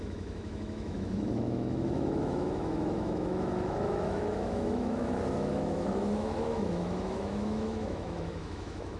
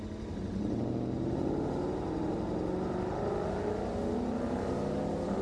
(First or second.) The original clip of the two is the second